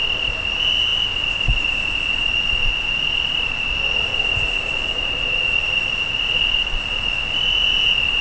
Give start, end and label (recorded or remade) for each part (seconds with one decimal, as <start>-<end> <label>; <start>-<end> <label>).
0.0-8.2 recorded